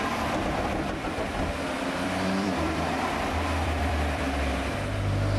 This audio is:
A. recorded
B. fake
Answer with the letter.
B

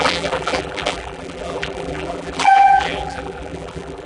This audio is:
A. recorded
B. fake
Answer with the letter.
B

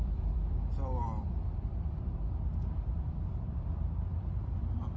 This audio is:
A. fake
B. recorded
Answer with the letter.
A